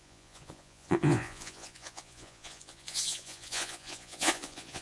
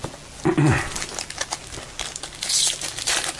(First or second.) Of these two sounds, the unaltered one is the second